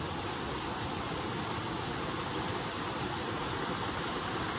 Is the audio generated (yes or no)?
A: no